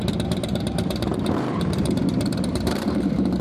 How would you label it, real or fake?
fake